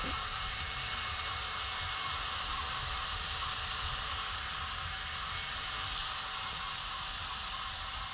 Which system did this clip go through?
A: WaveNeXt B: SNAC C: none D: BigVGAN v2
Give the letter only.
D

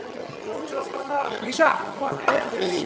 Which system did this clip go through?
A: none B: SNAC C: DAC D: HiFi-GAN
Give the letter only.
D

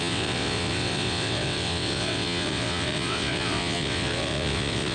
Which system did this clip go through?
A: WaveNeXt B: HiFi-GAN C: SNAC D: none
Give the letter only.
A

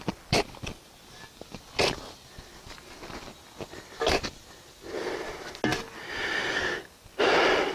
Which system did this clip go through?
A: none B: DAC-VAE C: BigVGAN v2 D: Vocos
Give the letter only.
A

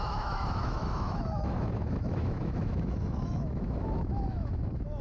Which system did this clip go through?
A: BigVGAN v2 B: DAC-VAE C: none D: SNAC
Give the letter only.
B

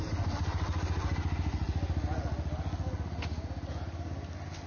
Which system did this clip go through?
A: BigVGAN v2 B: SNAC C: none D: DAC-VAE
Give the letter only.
C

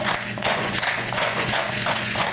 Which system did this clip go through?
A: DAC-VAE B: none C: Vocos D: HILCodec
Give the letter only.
C